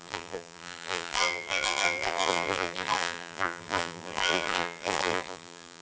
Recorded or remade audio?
remade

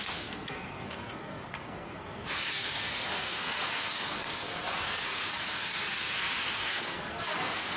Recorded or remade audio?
remade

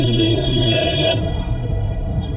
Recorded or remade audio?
remade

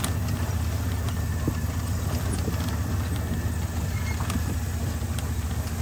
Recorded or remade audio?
recorded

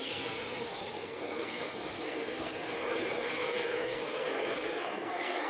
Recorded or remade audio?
remade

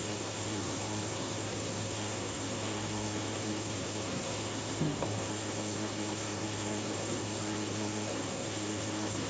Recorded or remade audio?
remade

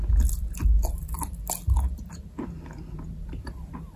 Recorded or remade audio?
recorded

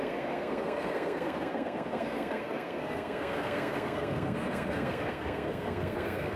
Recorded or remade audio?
remade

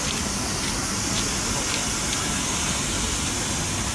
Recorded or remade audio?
recorded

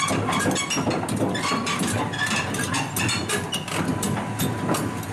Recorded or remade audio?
recorded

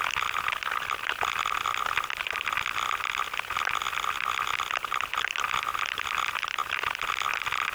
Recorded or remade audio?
recorded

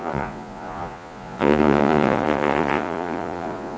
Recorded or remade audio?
remade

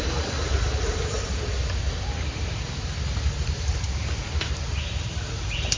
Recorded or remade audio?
remade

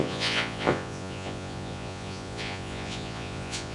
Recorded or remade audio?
remade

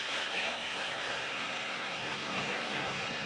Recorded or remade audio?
remade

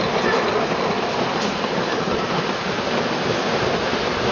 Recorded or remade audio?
recorded